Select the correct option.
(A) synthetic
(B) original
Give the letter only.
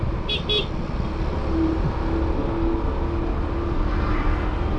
B